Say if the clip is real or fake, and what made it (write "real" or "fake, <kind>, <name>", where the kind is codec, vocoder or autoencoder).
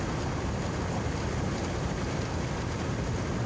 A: real